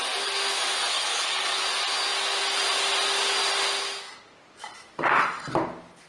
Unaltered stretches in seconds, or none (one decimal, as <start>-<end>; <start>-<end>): 0.0-0.9; 1.6-6.1